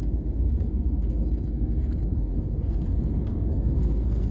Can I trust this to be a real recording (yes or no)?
no